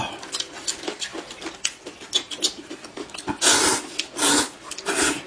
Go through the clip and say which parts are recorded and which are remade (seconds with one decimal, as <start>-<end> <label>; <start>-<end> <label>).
0.0-5.3 recorded